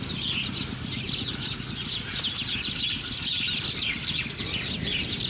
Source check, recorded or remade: recorded